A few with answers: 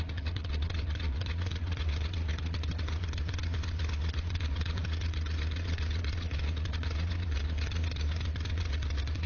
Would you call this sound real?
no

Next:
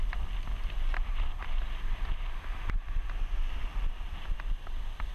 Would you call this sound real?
yes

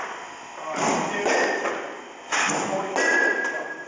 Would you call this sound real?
yes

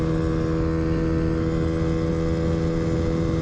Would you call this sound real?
yes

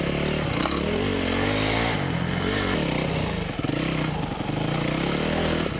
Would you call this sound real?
yes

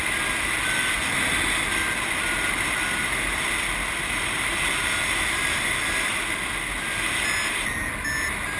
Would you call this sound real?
yes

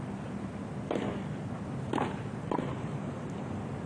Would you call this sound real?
yes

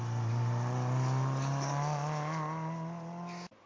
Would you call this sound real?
yes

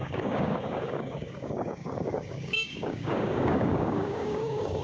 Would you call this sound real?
no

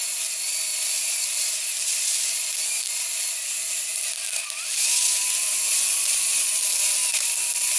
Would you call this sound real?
yes